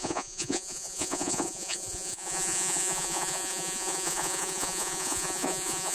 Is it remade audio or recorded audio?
remade